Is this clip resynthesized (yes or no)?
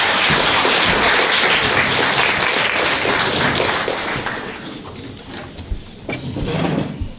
no